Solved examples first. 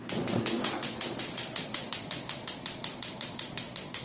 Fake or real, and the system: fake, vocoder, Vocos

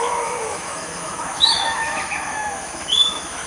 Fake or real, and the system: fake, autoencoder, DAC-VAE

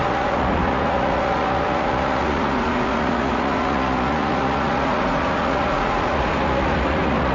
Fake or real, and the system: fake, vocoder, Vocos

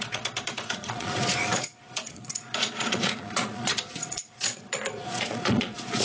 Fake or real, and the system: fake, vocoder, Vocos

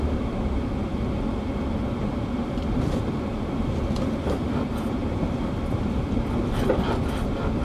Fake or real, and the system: real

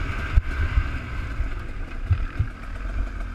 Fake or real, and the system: real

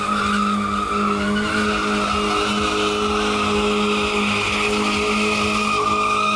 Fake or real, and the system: real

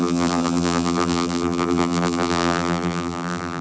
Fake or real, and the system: fake, vocoder, BigVGAN v2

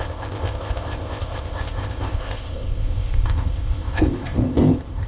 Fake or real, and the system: fake, codec, ZipCodec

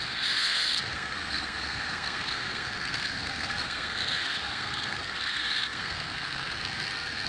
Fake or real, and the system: fake, codec, SNAC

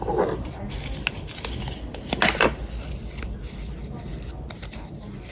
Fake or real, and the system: real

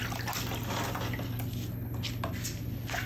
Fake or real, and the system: real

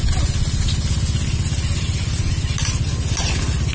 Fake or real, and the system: real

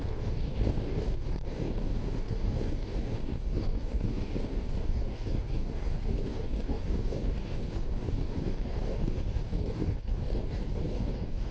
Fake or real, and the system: fake, codec, DAC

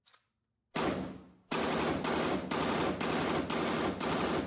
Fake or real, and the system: real